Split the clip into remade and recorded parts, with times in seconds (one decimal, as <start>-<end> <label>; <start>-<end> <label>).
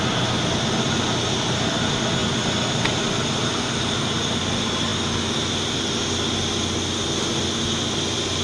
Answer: 0.0-8.4 recorded